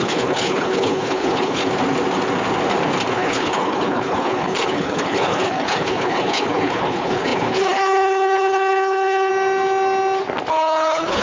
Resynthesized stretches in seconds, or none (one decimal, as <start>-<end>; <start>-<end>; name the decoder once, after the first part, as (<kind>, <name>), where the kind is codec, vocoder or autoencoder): 0.0-1.6 (codec, HILCodec); 3.1-9.3; 10.5-11.2